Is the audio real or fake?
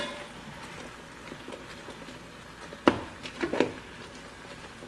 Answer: real